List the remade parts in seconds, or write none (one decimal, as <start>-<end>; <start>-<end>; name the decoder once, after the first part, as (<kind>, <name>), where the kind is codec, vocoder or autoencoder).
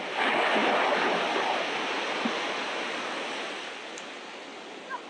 none